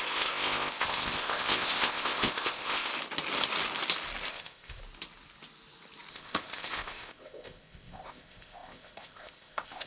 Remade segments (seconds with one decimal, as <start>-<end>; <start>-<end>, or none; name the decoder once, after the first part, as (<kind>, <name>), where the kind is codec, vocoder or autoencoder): 0.0-2.9 (codec, ZipCodec); 4.3-4.8; 6.1-9.9